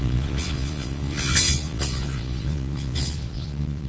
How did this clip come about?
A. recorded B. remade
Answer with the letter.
B